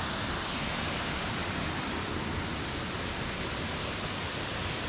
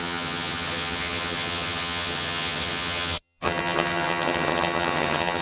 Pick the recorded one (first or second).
first